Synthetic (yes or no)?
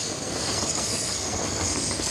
yes